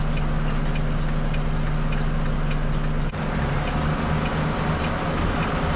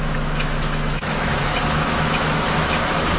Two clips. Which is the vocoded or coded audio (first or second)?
second